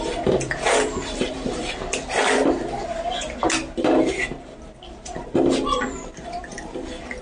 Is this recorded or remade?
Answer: remade